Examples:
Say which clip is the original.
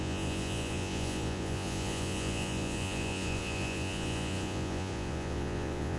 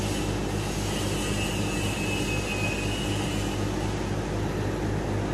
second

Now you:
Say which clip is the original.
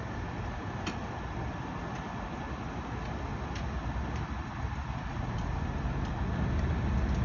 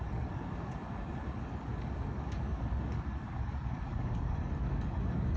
first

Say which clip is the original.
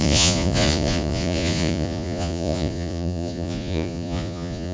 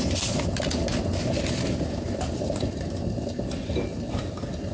second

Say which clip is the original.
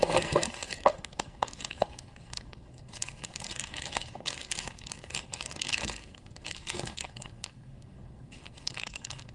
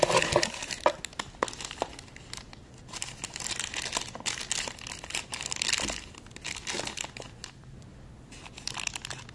second